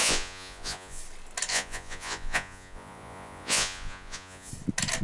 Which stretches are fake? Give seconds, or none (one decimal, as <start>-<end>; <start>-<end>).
0.0-1.0; 1.5-4.5

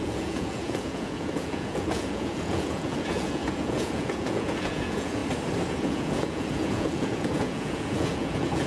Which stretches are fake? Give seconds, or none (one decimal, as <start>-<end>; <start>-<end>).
0.0-5.2; 5.7-8.7

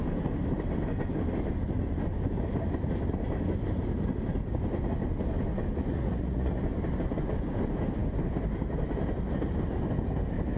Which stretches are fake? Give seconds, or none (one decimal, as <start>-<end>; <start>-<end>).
5.9-6.6

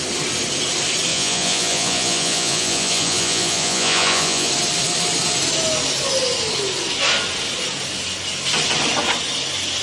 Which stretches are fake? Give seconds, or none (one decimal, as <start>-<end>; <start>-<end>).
1.1-4.5

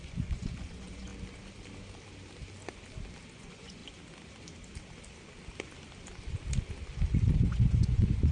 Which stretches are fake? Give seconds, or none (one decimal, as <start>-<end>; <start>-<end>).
0.0-1.1; 3.3-3.8; 7.4-8.3

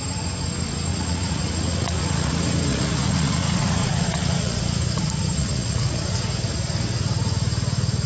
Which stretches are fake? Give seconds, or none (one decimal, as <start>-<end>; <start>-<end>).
0.9-2.3; 2.7-4.6; 5.4-6.0

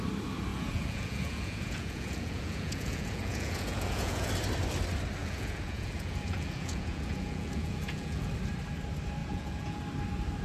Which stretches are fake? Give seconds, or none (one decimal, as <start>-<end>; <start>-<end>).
0.5-4.3; 5.2-8.3; 9.2-9.8